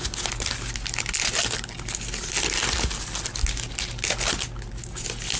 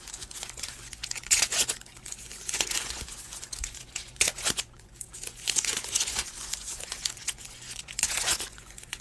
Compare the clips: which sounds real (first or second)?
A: first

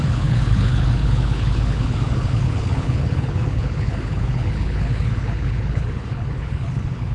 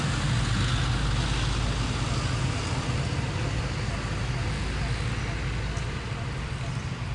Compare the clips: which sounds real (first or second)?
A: second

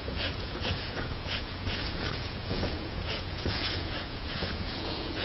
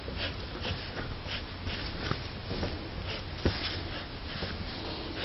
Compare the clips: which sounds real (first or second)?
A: second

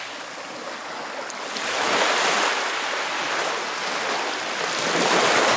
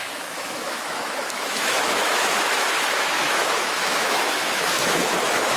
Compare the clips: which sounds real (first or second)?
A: first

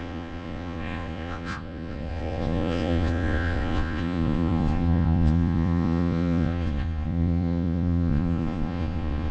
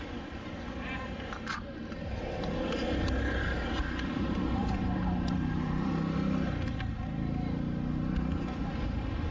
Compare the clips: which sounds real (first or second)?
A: second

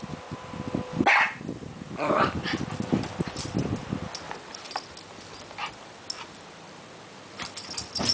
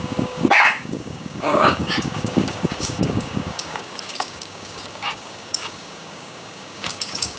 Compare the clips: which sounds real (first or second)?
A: first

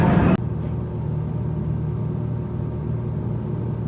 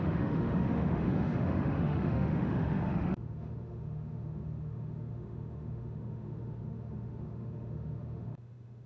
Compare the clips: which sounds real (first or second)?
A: first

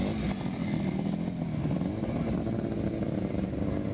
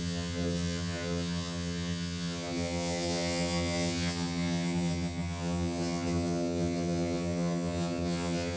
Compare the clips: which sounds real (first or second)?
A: first